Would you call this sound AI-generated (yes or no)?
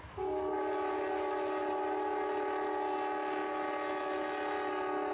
no